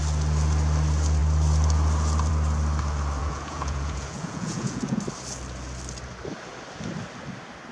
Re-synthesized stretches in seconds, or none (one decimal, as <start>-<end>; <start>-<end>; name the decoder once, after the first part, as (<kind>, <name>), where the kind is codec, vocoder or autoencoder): 3.2-5.0 (vocoder, Vocos)